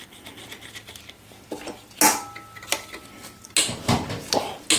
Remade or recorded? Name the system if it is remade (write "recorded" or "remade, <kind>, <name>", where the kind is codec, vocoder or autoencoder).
recorded